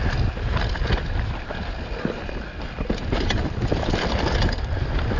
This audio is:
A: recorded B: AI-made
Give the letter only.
A